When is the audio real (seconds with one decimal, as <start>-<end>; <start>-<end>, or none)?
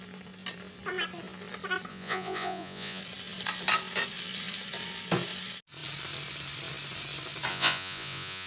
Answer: 0.0-1.9; 3.0-7.5